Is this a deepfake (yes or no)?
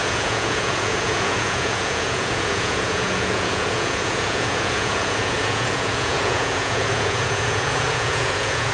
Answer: yes